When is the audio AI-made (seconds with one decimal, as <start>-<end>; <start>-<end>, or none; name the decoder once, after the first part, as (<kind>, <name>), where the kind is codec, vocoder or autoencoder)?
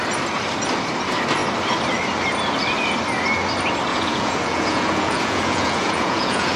3.9-6.6 (vocoder, Vocos)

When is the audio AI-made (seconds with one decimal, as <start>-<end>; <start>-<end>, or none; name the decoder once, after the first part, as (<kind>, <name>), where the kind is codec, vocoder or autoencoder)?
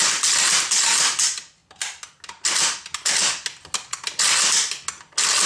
none